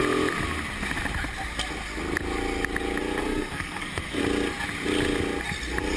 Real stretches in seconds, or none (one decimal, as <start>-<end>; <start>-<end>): 0.0-3.2; 4.2-6.0